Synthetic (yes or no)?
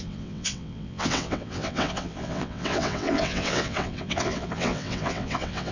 yes